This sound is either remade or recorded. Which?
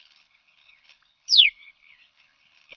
remade